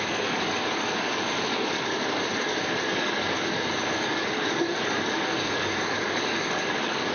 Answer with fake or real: fake